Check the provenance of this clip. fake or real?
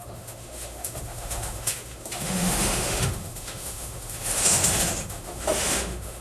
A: fake